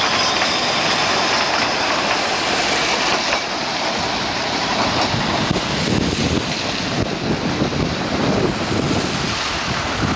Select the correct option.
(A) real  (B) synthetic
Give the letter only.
A